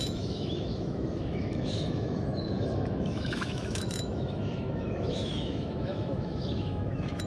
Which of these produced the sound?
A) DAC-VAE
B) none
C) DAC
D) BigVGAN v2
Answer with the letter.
A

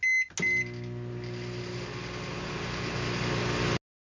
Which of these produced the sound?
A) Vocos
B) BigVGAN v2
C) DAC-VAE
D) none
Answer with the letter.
D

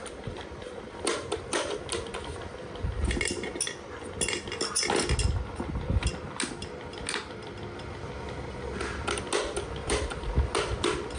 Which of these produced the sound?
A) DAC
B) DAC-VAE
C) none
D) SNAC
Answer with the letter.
C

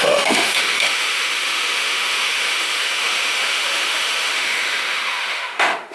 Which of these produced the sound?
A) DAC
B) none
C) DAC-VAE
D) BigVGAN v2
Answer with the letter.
C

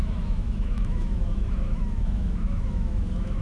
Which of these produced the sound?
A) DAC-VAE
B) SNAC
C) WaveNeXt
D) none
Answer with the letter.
A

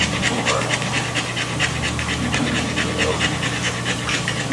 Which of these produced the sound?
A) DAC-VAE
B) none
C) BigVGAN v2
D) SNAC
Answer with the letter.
B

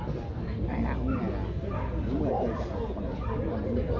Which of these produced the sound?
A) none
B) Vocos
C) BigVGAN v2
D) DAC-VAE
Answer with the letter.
A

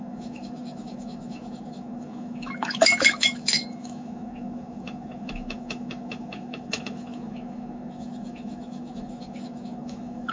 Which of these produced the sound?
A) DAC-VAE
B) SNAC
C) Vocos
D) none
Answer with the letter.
A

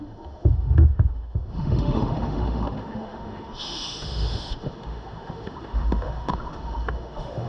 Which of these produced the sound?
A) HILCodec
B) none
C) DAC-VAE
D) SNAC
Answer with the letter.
C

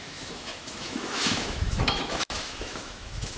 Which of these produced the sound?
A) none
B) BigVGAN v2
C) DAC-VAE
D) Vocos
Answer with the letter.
C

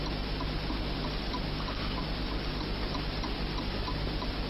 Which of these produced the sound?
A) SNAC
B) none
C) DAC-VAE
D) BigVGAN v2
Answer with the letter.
B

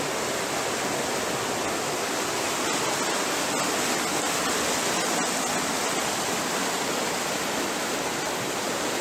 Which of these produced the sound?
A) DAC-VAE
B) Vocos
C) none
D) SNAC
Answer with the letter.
C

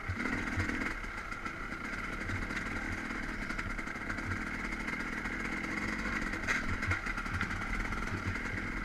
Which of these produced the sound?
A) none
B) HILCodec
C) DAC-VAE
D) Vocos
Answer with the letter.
A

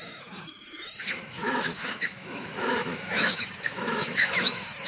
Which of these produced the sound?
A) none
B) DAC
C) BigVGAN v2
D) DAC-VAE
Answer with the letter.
D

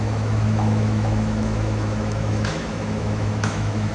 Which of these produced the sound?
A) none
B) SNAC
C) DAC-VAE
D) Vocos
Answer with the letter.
C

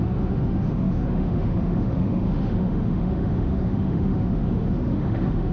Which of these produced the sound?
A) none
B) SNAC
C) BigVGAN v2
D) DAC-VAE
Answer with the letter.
D